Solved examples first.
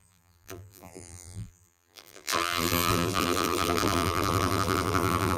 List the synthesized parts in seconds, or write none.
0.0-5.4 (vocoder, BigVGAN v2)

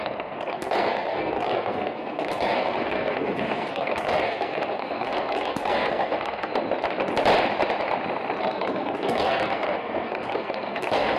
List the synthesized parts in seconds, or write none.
0.0-6.5 (codec, SNAC); 8.4-11.2